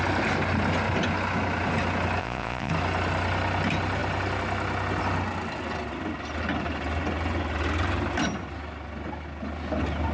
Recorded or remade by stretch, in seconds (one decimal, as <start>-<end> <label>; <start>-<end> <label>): 0.0-2.2 recorded; 2.2-2.7 remade; 2.7-10.1 recorded